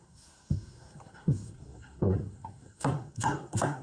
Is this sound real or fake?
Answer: fake